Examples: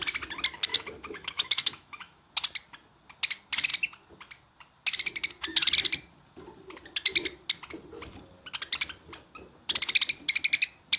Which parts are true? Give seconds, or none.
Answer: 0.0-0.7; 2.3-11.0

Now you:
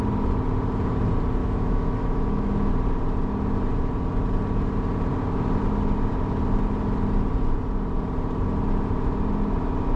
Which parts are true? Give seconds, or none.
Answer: 0.0-1.4; 2.7-10.0

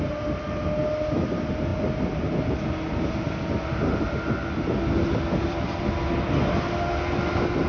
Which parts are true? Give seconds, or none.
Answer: 0.0-7.7

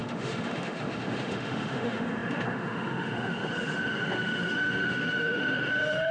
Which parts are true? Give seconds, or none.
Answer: none

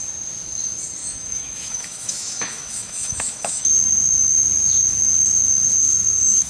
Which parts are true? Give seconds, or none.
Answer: 0.0-1.0; 3.8-5.8